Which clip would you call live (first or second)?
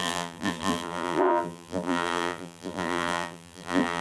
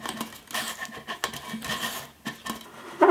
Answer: second